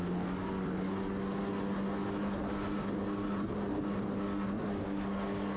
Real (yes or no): yes